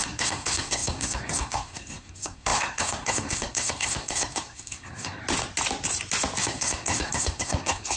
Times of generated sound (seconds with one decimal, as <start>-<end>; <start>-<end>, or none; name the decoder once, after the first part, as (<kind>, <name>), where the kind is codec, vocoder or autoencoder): 0.0-5.2 (codec, SNAC); 6.4-8.0